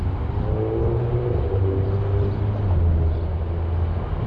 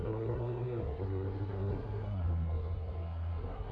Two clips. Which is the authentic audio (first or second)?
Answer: first